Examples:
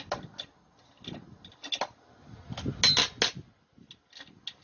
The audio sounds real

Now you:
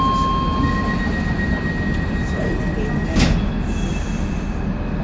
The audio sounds real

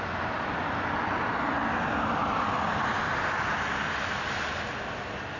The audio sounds real